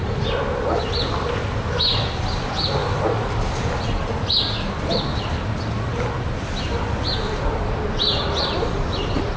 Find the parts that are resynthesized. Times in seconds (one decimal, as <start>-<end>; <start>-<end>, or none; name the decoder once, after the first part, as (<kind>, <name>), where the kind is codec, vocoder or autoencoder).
none

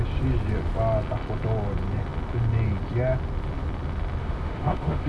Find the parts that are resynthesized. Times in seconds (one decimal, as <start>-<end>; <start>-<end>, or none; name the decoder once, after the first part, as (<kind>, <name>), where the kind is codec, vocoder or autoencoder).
4.2-5.1 (autoencoder, DAC-VAE)

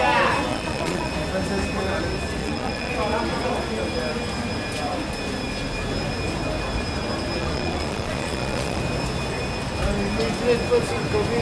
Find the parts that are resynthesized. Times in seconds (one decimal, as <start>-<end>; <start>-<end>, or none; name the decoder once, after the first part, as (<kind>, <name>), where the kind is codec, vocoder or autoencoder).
0.5-1.1 (vocoder, Vocos); 2.4-2.9; 7.4-8.8

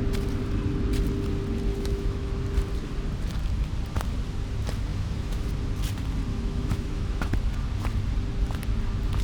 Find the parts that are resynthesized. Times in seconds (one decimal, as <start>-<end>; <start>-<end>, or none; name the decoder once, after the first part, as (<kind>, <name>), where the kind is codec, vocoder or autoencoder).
1.7-2.3 (autoencoder, DAC-VAE); 4.9-5.5; 6.3-7.3

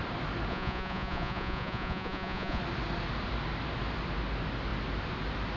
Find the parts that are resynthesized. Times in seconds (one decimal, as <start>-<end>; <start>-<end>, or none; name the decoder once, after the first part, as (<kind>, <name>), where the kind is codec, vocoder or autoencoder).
0.5-2.6 (vocoder, Vocos)

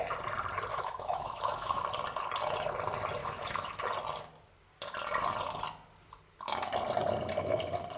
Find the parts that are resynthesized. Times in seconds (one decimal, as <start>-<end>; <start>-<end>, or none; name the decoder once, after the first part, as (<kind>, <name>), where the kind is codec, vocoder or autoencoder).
0.7-1.8 (autoencoder, DAC-VAE); 3.2-3.8

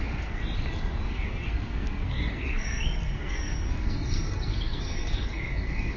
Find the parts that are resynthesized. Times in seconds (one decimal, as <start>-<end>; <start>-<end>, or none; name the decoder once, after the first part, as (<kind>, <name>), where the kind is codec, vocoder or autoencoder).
0.0-0.4 (codec, SNAC); 1.0-6.0